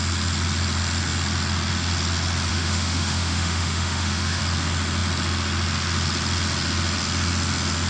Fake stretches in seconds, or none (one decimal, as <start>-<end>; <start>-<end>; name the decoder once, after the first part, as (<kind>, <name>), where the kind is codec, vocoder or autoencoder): 2.5-4.4 (autoencoder, DAC-VAE)